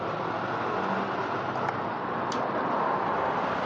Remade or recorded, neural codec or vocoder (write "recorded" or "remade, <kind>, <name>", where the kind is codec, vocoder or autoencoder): recorded